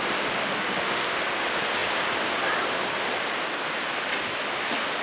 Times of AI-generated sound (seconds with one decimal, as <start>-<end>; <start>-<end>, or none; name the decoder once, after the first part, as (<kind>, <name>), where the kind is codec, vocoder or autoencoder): 0.4-1.2 (autoencoder, DAC-VAE)